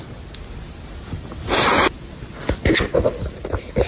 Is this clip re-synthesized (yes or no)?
no